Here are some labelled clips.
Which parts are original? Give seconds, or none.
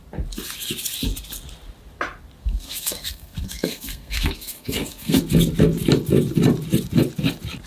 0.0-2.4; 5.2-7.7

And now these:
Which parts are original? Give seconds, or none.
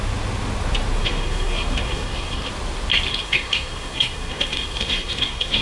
0.0-1.0; 2.5-3.1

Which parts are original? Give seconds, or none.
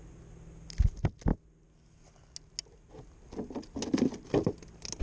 0.0-5.0